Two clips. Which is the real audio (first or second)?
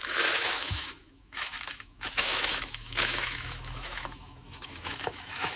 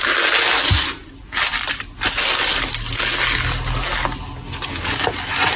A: second